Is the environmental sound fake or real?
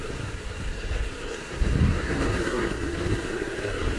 fake